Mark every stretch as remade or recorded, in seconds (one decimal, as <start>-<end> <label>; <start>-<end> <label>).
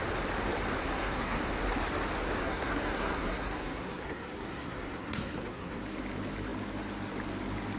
0.0-0.8 recorded; 0.8-1.5 remade; 1.5-2.4 recorded; 2.4-5.8 remade; 5.8-7.8 recorded